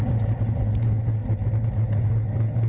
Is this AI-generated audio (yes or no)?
no